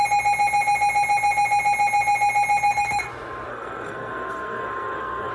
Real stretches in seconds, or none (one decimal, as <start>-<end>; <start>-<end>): 0.0-3.5